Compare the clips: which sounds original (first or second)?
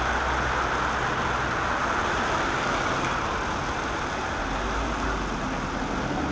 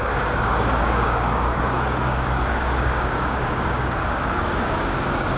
first